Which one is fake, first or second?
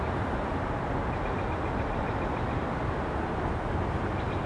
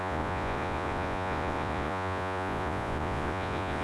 second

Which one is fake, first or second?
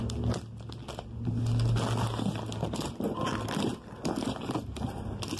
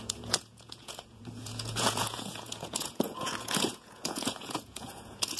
second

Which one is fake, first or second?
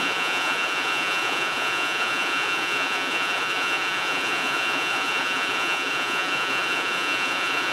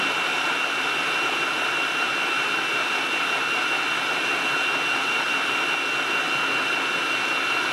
first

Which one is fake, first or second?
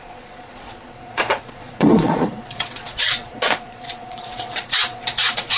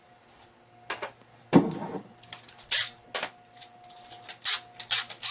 first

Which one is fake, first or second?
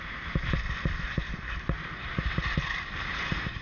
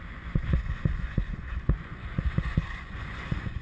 second